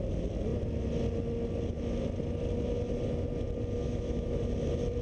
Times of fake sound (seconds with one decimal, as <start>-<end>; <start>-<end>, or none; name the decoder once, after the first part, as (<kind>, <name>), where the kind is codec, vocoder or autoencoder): 3.8-4.4 (autoencoder, DAC-VAE)